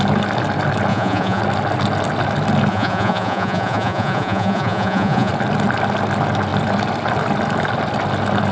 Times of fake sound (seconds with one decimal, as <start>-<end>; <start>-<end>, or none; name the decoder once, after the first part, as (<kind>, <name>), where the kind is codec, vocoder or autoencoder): 0.9-1.4 (vocoder, Vocos); 2.7-5.3